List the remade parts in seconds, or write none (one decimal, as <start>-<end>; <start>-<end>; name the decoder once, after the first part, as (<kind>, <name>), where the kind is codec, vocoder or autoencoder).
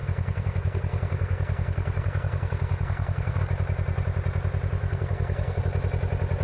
0.0-3.4 (codec, SNAC); 4.8-5.6